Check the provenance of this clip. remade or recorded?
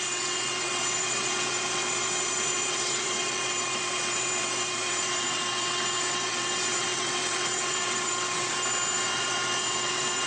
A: remade